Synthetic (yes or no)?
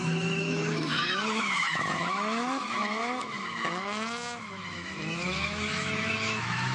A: yes